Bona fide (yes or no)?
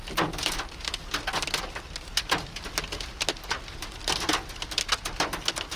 yes